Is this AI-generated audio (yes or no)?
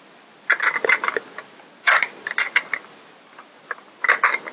no